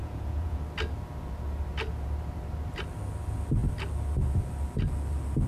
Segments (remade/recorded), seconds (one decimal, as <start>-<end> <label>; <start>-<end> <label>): 0.0-0.6 remade; 0.6-5.5 recorded